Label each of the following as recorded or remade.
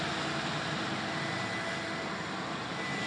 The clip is recorded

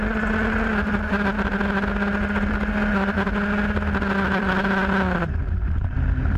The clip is recorded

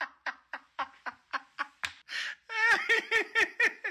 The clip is recorded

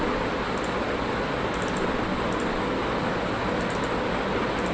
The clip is recorded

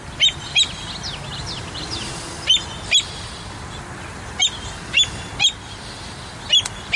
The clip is recorded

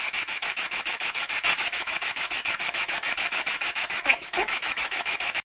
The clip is remade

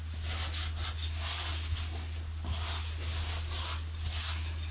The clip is recorded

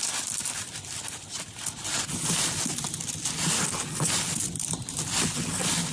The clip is recorded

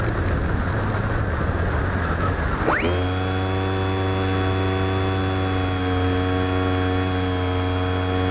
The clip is recorded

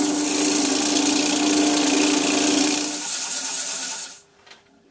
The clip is recorded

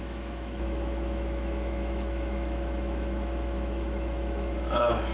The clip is remade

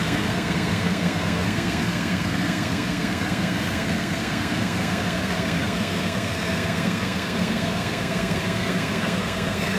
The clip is remade